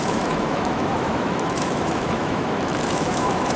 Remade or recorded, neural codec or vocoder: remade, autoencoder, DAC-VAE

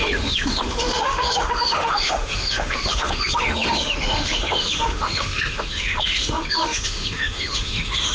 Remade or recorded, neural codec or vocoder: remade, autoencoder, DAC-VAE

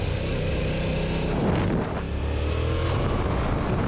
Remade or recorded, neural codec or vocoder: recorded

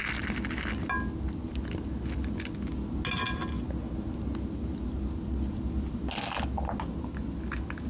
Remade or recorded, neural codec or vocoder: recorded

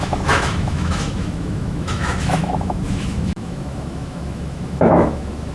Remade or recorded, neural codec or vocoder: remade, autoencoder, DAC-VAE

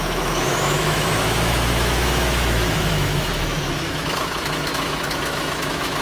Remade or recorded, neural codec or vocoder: remade, autoencoder, DAC-VAE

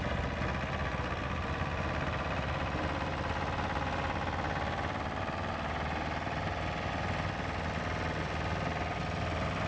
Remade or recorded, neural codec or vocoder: recorded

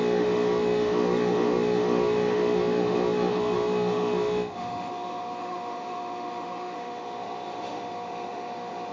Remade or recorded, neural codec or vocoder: remade, autoencoder, DAC-VAE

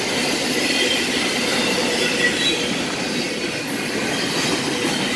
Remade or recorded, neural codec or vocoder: recorded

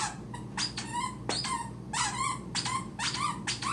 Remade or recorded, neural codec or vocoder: recorded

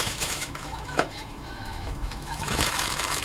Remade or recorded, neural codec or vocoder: remade, autoencoder, DAC-VAE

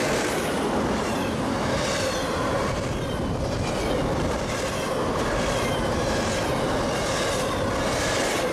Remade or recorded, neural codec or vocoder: recorded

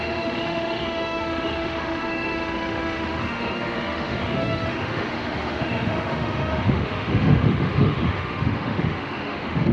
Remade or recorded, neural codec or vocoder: remade, autoencoder, DAC-VAE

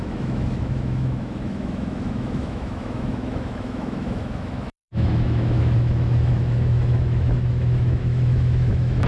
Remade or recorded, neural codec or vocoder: remade, autoencoder, DAC-VAE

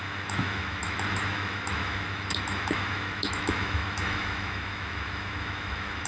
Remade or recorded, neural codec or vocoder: remade, autoencoder, DAC-VAE